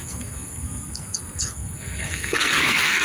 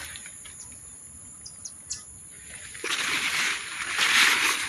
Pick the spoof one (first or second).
first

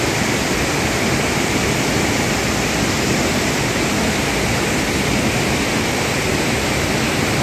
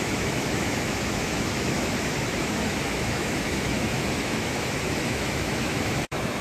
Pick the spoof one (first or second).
second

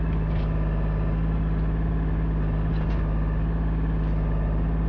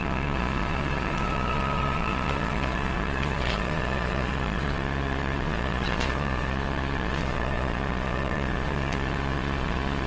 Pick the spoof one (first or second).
second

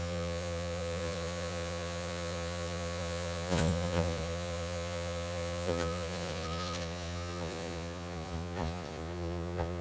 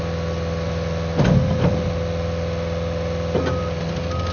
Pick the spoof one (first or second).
first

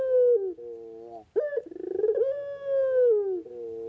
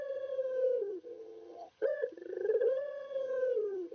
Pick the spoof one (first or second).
second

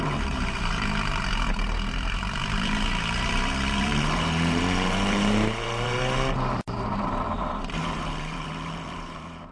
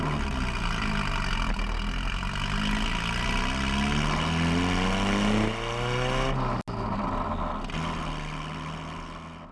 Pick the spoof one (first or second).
first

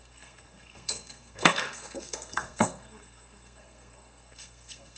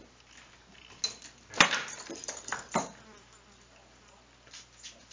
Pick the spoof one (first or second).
first